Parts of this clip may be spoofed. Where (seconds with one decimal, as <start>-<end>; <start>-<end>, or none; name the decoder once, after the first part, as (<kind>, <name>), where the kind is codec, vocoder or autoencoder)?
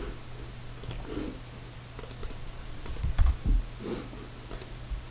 2.2-3.3 (vocoder, Vocos)